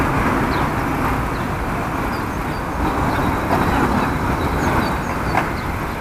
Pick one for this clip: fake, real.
real